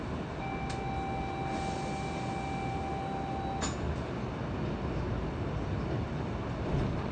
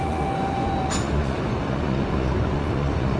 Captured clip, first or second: first